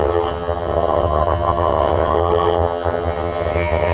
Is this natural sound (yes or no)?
no